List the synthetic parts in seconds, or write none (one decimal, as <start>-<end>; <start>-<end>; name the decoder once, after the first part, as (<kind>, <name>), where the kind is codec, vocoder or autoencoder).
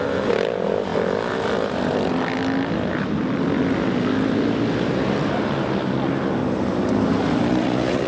7.5-8.1 (vocoder, Vocos)